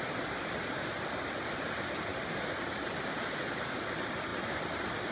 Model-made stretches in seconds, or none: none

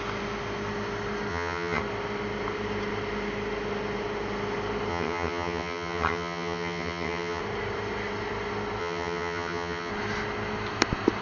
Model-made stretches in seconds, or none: 1.3-1.8 (vocoder, HiFi-GAN); 4.9-7.4; 8.8-9.9

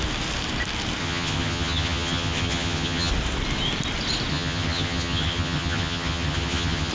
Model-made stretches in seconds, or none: 1.0-3.1 (vocoder, HiFi-GAN); 4.3-6.9

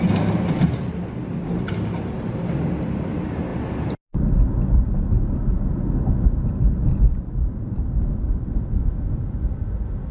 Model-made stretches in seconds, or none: none

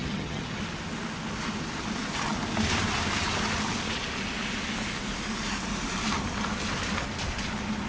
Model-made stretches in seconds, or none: 0.0-0.6 (vocoder, HiFi-GAN)

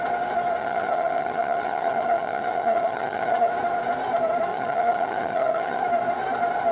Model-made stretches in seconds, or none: 0.6-3.5 (vocoder, HiFi-GAN); 4.5-5.8

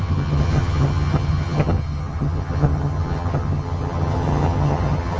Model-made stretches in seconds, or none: 0.0-5.2 (vocoder, HiFi-GAN)

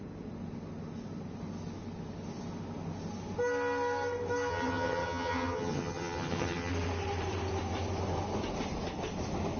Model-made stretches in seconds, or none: 4.5-6.7 (vocoder, HiFi-GAN)